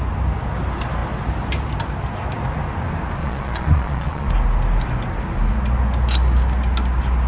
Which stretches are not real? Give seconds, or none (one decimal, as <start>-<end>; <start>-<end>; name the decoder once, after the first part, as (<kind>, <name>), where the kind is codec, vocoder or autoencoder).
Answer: 3.2-4.3 (vocoder, Vocos)